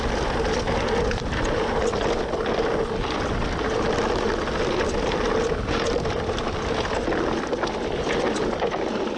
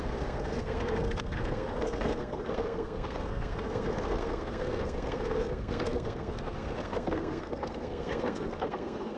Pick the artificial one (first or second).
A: second